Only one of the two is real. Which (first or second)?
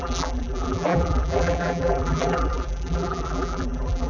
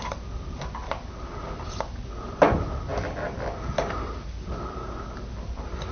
second